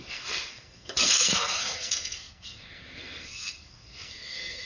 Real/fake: fake